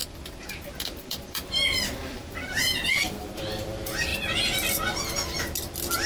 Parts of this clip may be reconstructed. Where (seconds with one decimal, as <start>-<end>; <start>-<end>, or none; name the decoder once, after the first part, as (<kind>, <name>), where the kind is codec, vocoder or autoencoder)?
0.0-4.1 (vocoder, BigVGAN v2)